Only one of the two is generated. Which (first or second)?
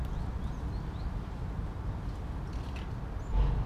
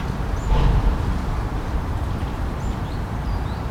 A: second